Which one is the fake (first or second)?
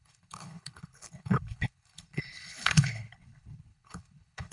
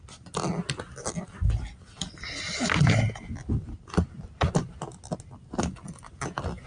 first